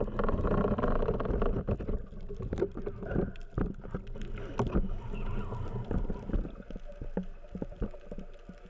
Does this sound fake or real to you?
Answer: real